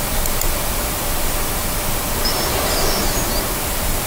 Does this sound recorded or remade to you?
recorded